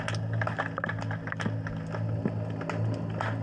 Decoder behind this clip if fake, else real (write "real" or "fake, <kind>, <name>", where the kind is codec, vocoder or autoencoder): real